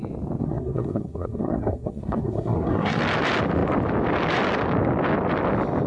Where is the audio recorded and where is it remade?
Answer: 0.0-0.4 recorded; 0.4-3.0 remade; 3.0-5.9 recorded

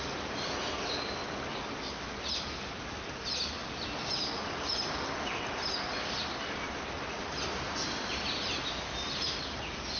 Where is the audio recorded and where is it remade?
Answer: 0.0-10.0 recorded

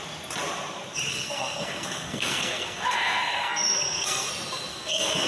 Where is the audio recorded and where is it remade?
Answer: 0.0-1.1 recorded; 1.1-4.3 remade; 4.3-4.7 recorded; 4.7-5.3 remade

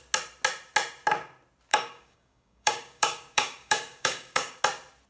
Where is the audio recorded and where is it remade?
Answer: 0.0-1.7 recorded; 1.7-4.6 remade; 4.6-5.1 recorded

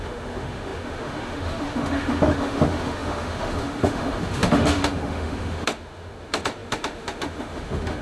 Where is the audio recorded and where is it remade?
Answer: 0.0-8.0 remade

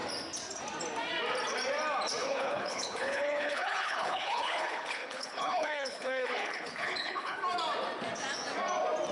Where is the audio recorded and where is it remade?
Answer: 0.0-2.2 recorded; 2.2-7.4 remade; 7.4-9.1 recorded